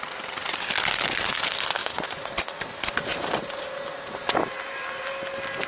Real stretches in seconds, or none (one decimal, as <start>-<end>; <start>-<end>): 0.0-1.8; 2.6-5.7